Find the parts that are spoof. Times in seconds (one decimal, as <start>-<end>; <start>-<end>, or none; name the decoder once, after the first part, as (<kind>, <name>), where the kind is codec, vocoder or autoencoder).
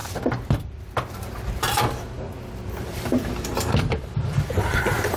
2.8-3.5 (vocoder, BigVGAN v2); 4.0-5.2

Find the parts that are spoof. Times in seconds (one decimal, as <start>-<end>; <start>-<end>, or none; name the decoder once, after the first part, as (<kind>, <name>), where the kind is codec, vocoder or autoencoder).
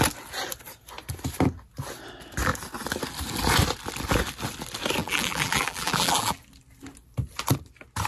5.0-6.4 (vocoder, BigVGAN v2)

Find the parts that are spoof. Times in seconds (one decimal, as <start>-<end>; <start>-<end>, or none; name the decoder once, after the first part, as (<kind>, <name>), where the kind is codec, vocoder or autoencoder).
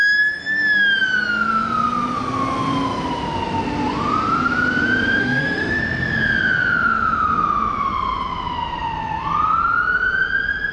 5.2-5.8 (autoencoder, DAC-VAE)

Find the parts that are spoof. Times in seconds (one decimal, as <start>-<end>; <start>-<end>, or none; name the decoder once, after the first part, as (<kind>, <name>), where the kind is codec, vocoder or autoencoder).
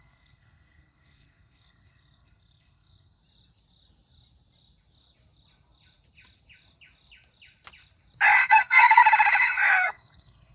0.0-3.2 (codec, SNAC); 8.5-9.0; 9.7-10.5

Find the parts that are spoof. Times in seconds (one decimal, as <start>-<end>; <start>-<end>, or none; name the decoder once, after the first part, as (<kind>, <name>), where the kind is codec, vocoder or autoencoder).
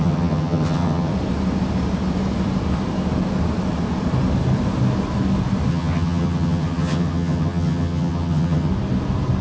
0.0-1.1 (vocoder, HiFi-GAN); 5.7-8.7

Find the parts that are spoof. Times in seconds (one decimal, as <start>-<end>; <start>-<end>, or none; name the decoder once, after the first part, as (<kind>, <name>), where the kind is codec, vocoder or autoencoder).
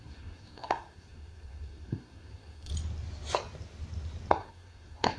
0.0-2.7 (codec, SNAC); 4.3-5.2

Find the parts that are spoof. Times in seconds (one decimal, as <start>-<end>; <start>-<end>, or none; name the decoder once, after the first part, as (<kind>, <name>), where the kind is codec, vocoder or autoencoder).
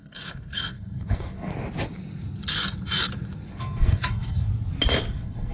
0.0-1.5 (codec, SNAC); 3.5-4.5; 5.1-5.5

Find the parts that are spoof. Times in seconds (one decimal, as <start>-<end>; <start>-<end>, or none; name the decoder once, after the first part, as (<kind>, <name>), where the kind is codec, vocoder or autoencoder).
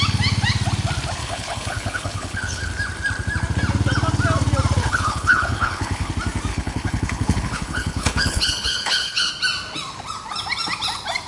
1.2-2.7 (codec, HILCodec); 4.8-6.1; 6.5-9.3